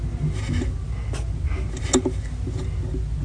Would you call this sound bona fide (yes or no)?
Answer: yes